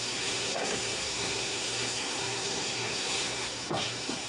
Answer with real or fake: fake